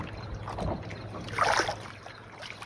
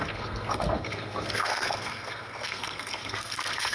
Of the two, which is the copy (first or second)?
second